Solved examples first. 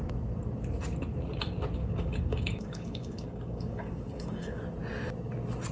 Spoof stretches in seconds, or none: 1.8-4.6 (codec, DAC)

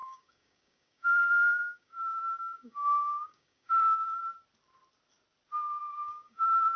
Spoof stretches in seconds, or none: 0.0-4.2 (codec, DAC); 5.8-6.8

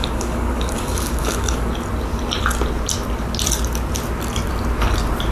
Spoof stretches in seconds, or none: 0.0-1.7 (codec, DAC)

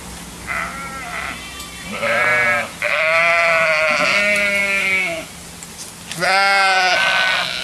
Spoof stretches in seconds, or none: 4.6-5.3 (codec, DAC)